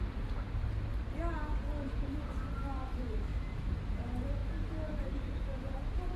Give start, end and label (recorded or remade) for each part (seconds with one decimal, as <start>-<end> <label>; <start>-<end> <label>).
0.0-1.7 recorded; 1.7-2.3 remade; 2.3-3.3 recorded; 3.3-3.8 remade; 3.8-6.2 recorded